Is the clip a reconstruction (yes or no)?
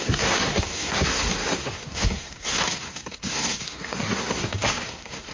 yes